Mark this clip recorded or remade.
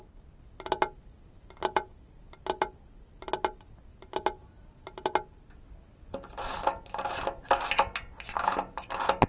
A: recorded